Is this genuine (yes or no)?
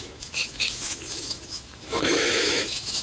no